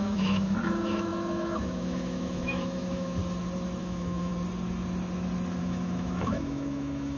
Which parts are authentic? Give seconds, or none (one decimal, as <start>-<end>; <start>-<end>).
3.2-3.8; 4.3-5.6